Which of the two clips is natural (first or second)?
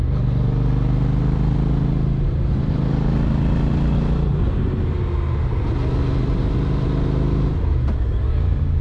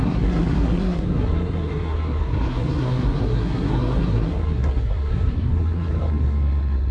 first